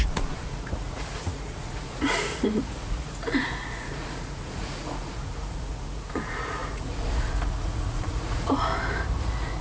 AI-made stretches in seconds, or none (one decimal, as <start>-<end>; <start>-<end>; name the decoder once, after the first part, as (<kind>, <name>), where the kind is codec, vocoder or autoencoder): 0.0-8.7 (vocoder, Vocos); 9.2-9.6